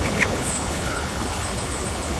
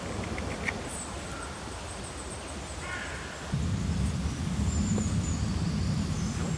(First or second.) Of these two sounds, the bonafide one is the second